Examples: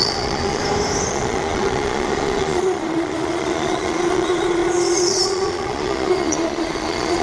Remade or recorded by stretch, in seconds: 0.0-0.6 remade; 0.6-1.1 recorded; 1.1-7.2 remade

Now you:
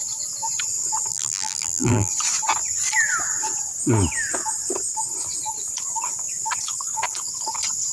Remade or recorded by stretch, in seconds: 0.0-1.1 recorded; 1.1-2.1 remade; 2.1-7.9 recorded

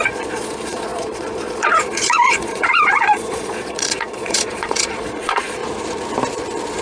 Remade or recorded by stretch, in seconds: 0.0-5.6 remade; 5.6-6.8 recorded

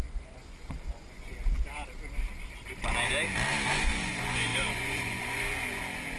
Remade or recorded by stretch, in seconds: 0.0-1.3 remade; 1.3-3.7 recorded; 3.7-6.2 remade

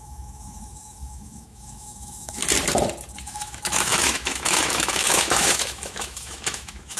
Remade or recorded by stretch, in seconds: 0.0-2.4 remade; 2.4-3.2 recorded; 3.2-7.0 remade

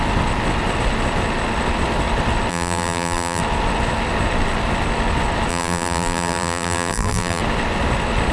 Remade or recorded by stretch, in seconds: 0.0-2.5 recorded; 2.5-3.4 remade; 3.4-5.5 recorded; 5.5-7.4 remade; 7.4-8.3 recorded

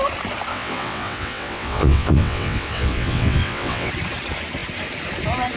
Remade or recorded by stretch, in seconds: 0.0-0.5 recorded; 0.5-3.9 remade; 3.9-5.6 recorded

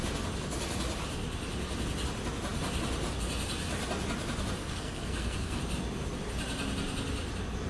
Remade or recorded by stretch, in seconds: 0.0-4.6 recorded; 4.6-5.6 remade; 5.6-7.7 recorded